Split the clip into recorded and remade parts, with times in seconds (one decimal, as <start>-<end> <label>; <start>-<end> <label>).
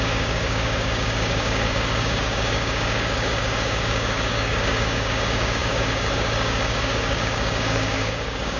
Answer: 0.0-8.6 remade